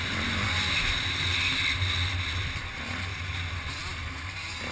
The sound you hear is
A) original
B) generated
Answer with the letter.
A